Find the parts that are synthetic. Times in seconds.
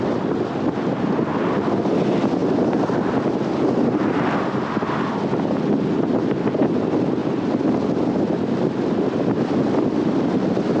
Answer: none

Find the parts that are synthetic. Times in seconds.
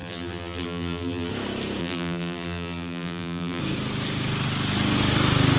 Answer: 0.0-1.3 (vocoder, BigVGAN v2); 1.8-3.6